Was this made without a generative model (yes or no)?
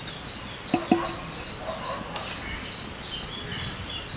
yes